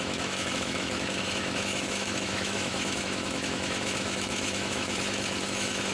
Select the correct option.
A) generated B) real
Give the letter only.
A